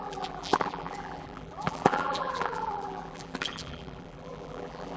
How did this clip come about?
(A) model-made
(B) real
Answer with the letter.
A